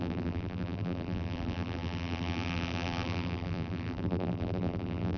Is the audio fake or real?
fake